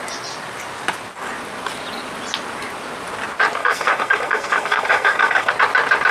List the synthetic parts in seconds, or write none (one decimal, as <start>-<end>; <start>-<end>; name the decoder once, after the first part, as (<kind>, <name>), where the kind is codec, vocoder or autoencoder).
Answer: 3.6-5.5 (codec, SNAC)